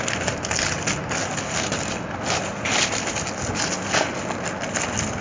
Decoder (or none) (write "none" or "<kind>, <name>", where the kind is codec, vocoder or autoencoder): none